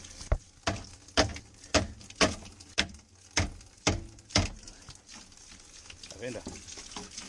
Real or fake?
real